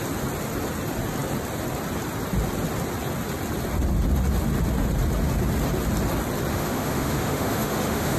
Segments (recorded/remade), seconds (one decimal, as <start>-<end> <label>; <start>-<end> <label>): 0.0-6.5 recorded; 6.5-8.2 remade